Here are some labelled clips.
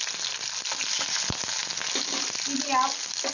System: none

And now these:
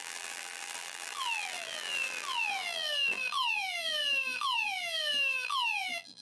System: vocoder, BigVGAN v2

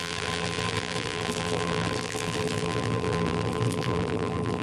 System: vocoder, BigVGAN v2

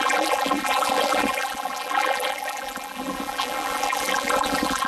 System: vocoder, BigVGAN v2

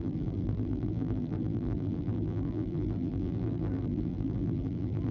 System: vocoder, BigVGAN v2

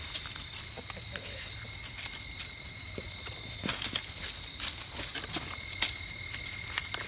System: none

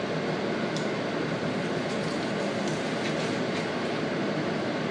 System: none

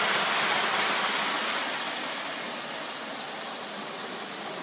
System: none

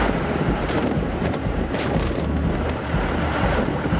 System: vocoder, BigVGAN v2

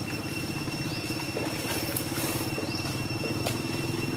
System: vocoder, BigVGAN v2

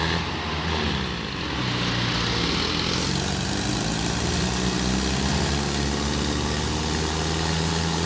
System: none